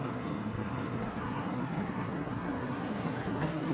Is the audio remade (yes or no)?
yes